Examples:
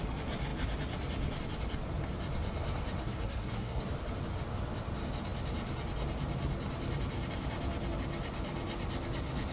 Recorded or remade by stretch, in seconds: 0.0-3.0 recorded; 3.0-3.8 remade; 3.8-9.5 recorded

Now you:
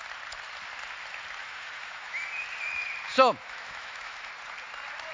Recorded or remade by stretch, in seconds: 0.0-1.4 recorded; 1.4-2.2 remade; 2.2-3.1 recorded; 3.1-4.3 remade; 4.3-5.1 recorded

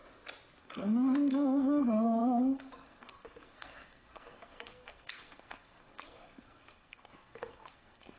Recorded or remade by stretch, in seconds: 0.0-0.6 recorded; 0.6-8.2 remade